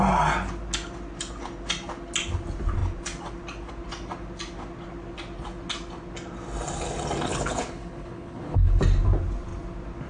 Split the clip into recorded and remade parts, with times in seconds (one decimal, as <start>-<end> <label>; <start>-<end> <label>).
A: 0.0-7.3 recorded; 7.3-8.8 remade; 8.8-10.1 recorded